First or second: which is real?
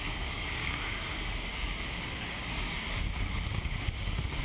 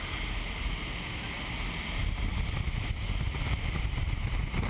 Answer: second